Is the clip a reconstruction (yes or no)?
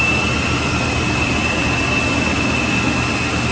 no